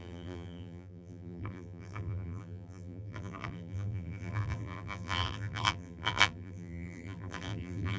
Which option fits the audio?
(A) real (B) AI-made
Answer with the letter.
B